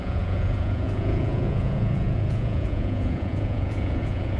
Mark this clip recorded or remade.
remade